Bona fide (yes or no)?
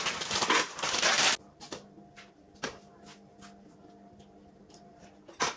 yes